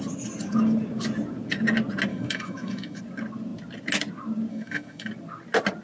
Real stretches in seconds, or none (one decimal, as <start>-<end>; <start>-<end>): 0.0-2.1; 3.0-4.5; 5.1-5.8